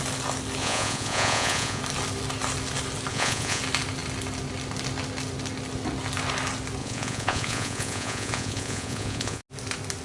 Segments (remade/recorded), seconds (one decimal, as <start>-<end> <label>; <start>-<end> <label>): 0.0-0.6 recorded; 0.6-1.8 remade; 1.8-3.1 recorded; 3.1-3.6 remade; 3.6-6.8 recorded; 6.8-9.4 remade; 9.4-10.0 recorded